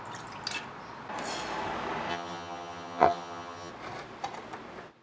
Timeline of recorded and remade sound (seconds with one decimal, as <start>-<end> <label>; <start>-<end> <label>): 0.0-2.1 recorded; 2.1-3.7 remade; 3.7-5.0 recorded